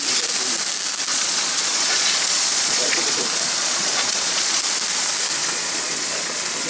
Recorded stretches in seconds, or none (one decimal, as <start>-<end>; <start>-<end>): 0.0-1.1; 3.2-3.6; 4.6-5.4